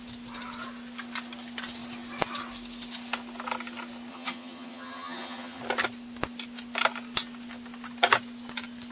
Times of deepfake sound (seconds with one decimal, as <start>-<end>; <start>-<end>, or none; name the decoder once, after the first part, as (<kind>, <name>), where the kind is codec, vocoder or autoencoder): 4.1-5.6 (vocoder, HiFi-GAN)